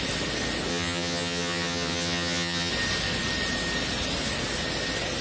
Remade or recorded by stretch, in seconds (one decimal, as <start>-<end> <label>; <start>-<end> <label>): 0.0-0.7 recorded; 0.7-2.7 remade; 2.7-5.2 recorded